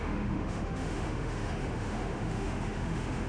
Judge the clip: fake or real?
fake